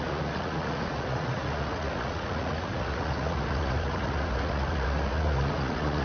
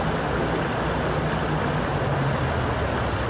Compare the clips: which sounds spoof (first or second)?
first